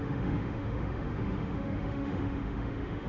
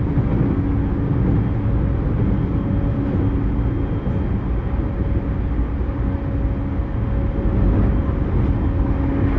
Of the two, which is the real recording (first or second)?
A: second